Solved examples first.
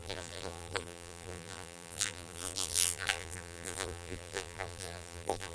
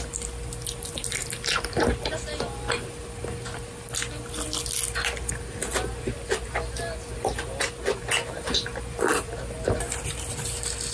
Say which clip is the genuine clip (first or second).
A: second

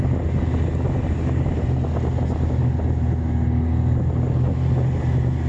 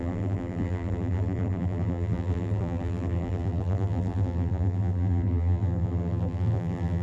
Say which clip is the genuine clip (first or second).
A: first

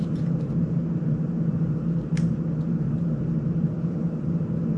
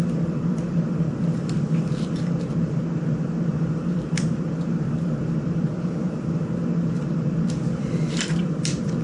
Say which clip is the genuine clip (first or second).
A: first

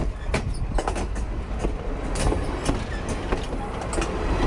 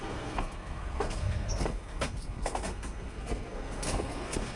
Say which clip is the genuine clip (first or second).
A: first